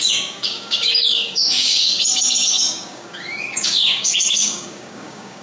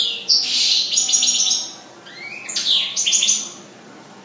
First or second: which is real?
second